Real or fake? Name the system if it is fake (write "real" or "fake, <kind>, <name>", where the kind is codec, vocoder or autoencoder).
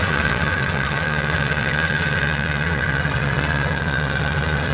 fake, vocoder, WaveNeXt